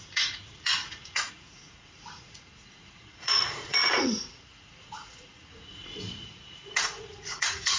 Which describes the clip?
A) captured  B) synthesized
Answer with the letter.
B